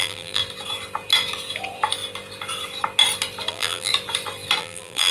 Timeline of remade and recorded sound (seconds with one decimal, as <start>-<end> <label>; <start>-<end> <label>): 0.0-0.4 remade; 0.4-3.5 recorded; 3.5-3.9 remade; 3.9-4.6 recorded; 4.6-5.1 remade